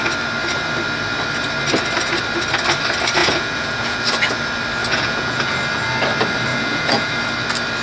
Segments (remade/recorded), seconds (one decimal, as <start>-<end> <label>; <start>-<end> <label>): 0.0-3.2 recorded; 3.2-4.0 remade; 4.0-4.8 recorded; 4.8-5.5 remade; 5.5-6.5 recorded; 6.5-7.1 remade; 7.1-7.8 recorded